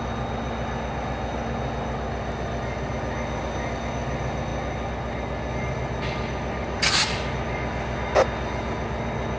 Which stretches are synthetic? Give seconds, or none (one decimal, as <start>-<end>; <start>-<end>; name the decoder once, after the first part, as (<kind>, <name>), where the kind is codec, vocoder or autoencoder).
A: none